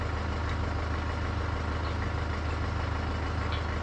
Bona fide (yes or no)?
yes